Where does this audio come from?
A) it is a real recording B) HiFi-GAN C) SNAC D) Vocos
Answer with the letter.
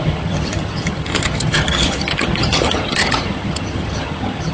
B